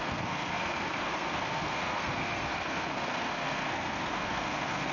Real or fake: fake